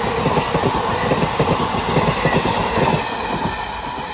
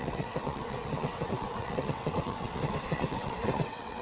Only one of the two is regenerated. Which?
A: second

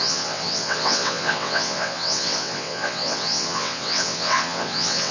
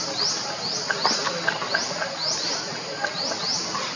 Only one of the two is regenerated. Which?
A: first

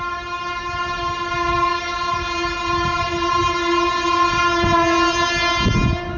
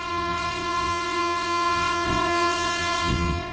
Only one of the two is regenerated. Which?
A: second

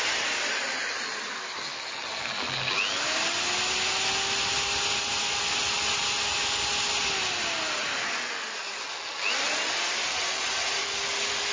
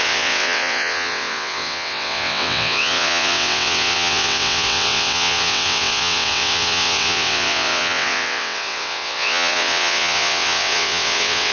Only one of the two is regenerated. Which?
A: second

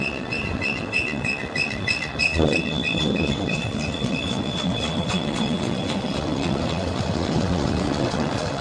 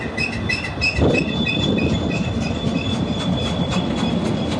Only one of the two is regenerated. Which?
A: first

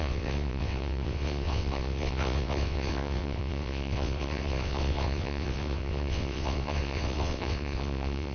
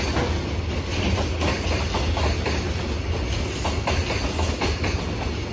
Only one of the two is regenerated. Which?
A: first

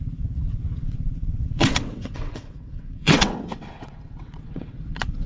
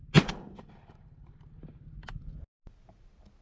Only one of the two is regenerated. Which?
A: first